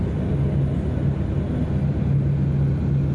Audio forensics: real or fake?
real